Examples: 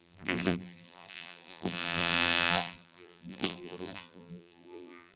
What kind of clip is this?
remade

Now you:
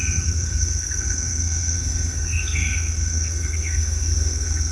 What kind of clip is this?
remade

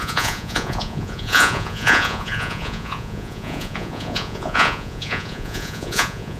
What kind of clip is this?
remade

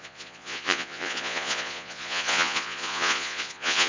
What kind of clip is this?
remade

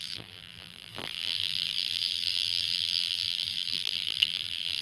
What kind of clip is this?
remade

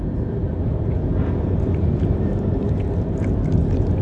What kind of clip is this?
remade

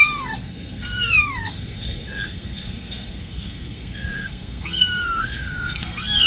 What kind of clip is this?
remade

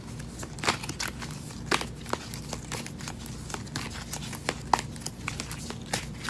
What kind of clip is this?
recorded